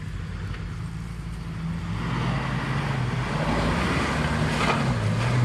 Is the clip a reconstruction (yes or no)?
no